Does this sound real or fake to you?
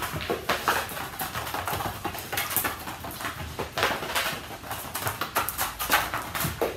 real